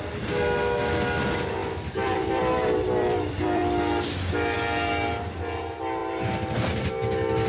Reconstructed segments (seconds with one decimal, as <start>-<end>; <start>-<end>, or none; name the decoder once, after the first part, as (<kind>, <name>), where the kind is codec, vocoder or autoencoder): 1.6-3.6 (vocoder, BigVGAN v2); 6.0-6.9